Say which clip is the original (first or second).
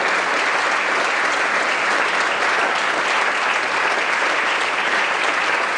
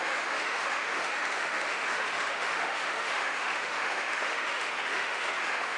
first